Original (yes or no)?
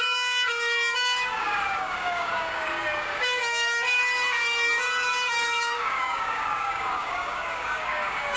no